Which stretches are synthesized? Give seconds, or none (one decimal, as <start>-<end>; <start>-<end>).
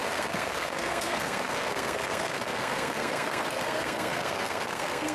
0.0-5.1